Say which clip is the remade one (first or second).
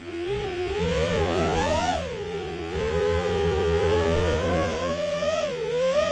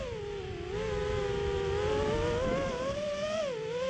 first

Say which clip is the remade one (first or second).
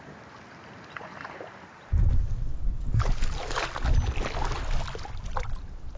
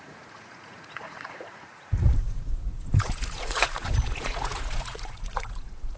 second